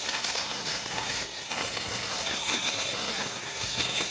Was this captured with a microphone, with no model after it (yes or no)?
no